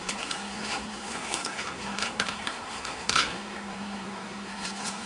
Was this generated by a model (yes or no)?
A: yes